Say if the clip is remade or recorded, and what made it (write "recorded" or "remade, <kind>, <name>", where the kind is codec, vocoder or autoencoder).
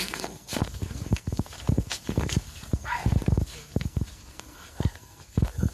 remade, codec, SNAC